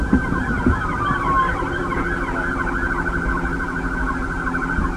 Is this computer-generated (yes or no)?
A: no